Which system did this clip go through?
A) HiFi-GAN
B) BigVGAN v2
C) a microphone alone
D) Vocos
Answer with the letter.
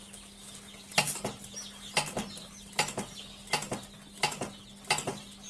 C